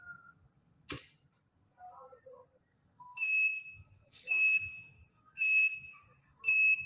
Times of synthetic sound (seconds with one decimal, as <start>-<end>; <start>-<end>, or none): 2.7-6.4